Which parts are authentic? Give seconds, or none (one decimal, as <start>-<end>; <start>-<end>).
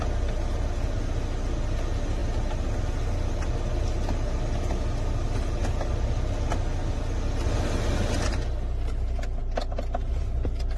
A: 0.0-10.8